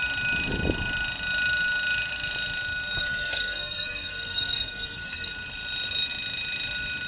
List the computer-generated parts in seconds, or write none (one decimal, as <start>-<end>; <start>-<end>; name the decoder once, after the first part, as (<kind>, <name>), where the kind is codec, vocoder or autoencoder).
3.0-5.3 (codec, SNAC)